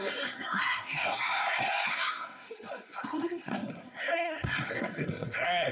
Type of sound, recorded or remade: remade